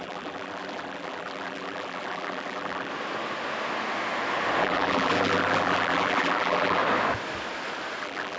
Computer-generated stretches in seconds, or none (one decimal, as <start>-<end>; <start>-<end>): 0.0-2.9; 4.6-6.8; 8.0-8.4